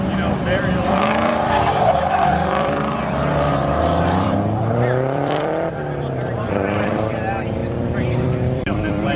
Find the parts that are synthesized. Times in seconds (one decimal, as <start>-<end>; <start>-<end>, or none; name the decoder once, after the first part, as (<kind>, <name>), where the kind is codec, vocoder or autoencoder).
0.0-9.2 (vocoder, BigVGAN v2)